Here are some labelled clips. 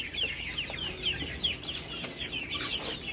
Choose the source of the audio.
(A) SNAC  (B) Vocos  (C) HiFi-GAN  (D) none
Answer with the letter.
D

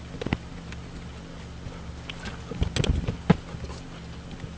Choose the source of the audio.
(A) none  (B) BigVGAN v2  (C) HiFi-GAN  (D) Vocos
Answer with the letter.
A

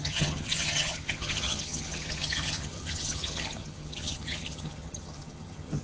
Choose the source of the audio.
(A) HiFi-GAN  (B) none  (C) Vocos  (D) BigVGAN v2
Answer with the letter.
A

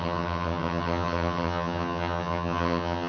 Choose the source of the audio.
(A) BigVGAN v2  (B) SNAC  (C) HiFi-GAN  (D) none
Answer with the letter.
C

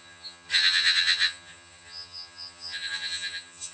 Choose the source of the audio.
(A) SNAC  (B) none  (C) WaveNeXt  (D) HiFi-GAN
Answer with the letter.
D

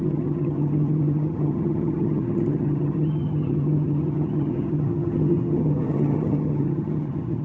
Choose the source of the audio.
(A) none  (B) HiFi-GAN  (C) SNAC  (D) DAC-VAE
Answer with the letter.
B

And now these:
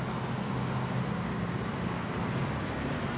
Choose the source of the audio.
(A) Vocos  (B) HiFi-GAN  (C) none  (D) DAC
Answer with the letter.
C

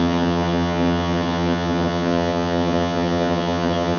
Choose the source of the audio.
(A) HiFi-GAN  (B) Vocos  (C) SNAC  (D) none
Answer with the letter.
A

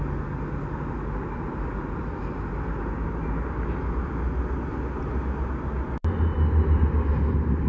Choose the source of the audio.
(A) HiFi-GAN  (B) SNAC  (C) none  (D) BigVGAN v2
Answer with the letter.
C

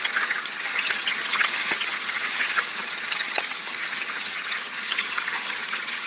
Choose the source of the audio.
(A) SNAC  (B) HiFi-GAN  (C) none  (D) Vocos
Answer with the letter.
B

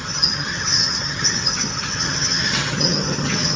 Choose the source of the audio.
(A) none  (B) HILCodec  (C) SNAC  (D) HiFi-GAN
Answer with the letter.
D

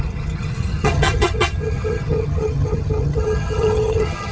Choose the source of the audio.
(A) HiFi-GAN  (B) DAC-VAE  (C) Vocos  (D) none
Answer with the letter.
A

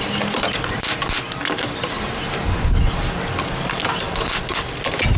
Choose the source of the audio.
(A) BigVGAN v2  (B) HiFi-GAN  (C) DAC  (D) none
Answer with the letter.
D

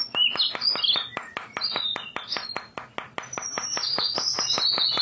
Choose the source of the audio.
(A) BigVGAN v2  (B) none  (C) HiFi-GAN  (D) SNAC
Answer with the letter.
B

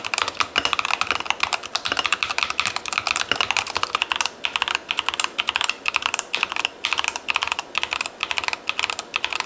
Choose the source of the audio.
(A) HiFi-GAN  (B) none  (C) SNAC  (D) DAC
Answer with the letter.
B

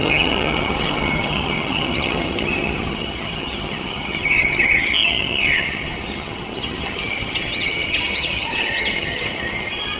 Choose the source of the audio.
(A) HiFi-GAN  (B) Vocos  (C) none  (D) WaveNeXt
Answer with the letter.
A